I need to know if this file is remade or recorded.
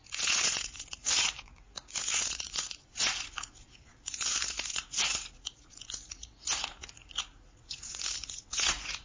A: remade